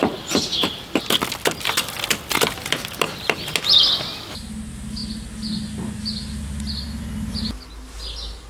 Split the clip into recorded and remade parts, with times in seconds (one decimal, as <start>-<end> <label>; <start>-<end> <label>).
0.0-5.0 recorded; 5.0-6.0 remade; 6.0-8.5 recorded